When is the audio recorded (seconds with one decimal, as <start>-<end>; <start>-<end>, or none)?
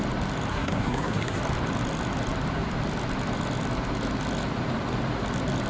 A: 0.0-0.5; 1.4-5.7